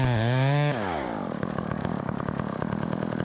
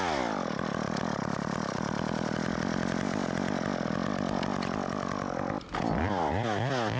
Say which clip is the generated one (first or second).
first